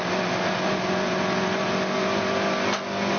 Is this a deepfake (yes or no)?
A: no